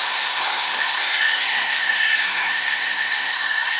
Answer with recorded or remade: remade